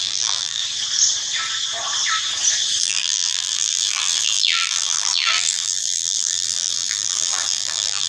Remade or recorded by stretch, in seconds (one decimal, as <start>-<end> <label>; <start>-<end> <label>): 0.0-0.6 remade; 0.6-2.8 recorded; 2.8-8.1 remade

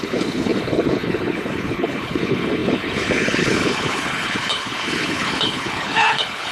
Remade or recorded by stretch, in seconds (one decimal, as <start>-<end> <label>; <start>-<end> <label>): 0.0-6.5 remade

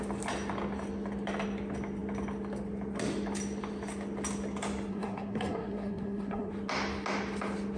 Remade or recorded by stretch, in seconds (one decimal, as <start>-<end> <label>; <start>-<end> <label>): 0.0-4.9 recorded; 4.9-6.5 remade; 6.5-7.8 recorded

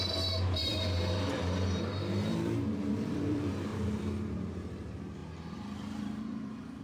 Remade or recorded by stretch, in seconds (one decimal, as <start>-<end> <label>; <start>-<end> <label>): 0.0-3.7 remade; 3.7-4.3 recorded; 4.3-6.8 remade

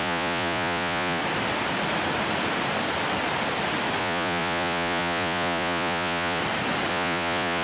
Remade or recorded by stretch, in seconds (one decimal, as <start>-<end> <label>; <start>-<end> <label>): 0.0-1.2 remade; 1.2-4.0 recorded; 4.0-6.4 remade; 6.4-6.9 recorded; 6.9-7.6 remade

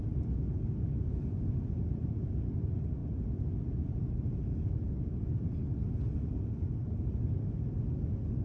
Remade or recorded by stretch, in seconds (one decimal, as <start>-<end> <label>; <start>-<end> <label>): 0.0-8.4 recorded

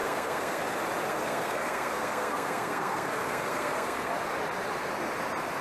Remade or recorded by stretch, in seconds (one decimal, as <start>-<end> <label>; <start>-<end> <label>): 0.0-0.6 remade; 0.6-1.1 recorded; 1.1-4.1 remade; 4.1-5.6 recorded

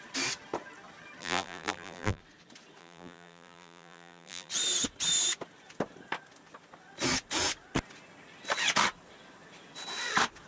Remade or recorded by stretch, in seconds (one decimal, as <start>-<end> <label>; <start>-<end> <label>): 0.0-1.2 recorded; 1.2-2.2 remade; 2.2-2.8 recorded; 2.8-4.5 remade; 4.5-10.5 recorded